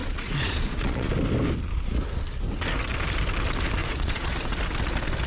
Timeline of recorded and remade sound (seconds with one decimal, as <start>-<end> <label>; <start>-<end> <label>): 0.0-1.1 remade; 1.1-3.8 recorded; 3.8-4.5 remade; 4.5-5.3 recorded